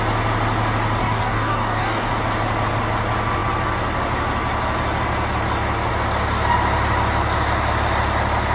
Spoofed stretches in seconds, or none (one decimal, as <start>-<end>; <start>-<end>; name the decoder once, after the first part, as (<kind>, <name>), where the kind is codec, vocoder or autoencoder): 1.0-2.1 (codec, DAC)